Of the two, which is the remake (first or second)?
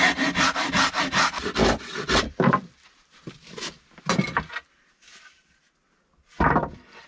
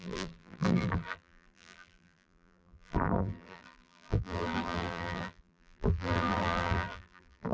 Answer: second